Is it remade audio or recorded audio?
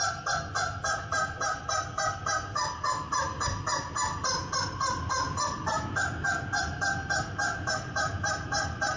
recorded